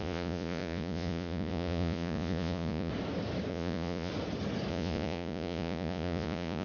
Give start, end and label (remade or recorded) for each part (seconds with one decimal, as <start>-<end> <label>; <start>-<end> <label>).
0.0-2.9 remade; 2.9-3.5 recorded; 3.5-4.1 remade; 4.1-4.7 recorded; 4.7-6.6 remade